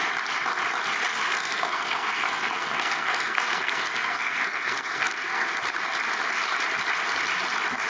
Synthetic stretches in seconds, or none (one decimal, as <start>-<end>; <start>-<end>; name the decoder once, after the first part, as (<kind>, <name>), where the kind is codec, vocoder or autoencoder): 1.1-5.5 (codec, SNAC)